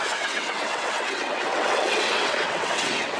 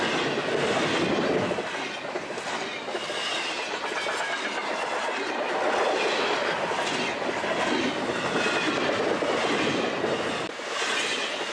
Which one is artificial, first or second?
first